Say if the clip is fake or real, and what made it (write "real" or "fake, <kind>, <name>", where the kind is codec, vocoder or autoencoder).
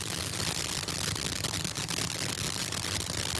real